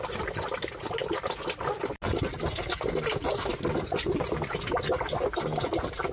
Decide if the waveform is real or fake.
real